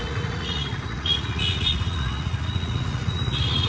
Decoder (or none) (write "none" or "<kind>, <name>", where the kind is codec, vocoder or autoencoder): vocoder, Vocos